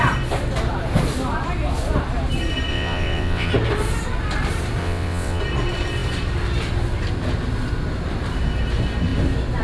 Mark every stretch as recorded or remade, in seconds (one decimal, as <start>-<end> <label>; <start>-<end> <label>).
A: 0.0-2.7 recorded; 2.7-3.5 remade; 3.5-4.8 recorded; 4.8-5.4 remade; 5.4-9.6 recorded